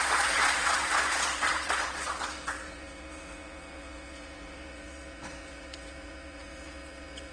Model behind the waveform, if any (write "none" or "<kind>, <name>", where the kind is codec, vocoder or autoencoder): vocoder, Vocos